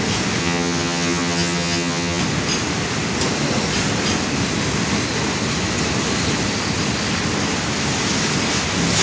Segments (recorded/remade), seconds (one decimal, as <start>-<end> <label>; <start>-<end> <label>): 0.0-0.4 recorded; 0.4-2.2 remade; 2.2-9.0 recorded